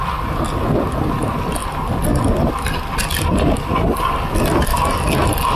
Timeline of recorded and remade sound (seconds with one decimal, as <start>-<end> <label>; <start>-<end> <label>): 0.0-5.6 recorded